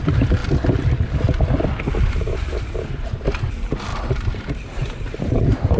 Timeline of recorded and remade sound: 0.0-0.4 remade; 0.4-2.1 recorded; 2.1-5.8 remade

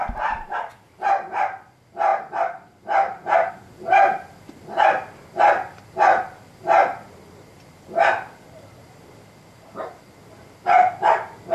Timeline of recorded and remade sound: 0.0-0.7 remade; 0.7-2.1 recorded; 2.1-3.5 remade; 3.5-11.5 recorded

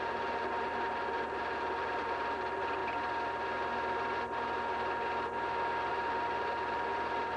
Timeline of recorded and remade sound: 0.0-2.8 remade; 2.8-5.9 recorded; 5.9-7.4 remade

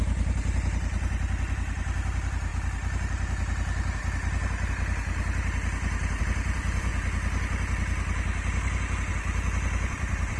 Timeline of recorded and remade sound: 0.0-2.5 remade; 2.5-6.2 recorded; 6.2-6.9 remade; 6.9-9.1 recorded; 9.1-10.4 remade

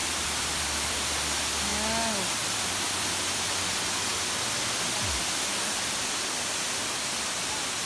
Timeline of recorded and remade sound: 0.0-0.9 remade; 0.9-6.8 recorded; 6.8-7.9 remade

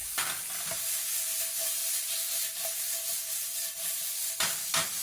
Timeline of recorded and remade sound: 0.0-1.8 recorded; 1.8-4.1 remade; 4.1-5.0 recorded

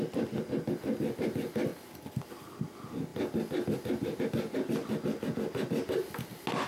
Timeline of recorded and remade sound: 0.0-1.7 recorded; 1.7-2.3 remade; 2.3-6.7 recorded